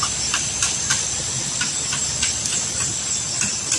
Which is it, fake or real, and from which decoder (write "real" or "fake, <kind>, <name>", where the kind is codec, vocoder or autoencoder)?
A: real